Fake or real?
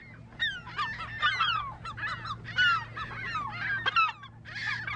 real